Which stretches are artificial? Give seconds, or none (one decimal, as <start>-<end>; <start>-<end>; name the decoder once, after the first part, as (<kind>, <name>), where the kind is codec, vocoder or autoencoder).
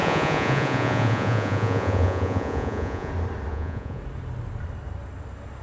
0.0-3.1 (vocoder, Vocos); 3.5-4.0